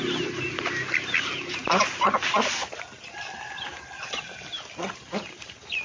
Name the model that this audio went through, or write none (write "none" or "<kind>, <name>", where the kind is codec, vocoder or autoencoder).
none